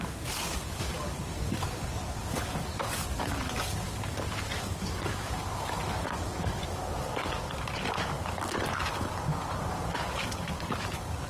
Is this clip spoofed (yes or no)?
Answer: yes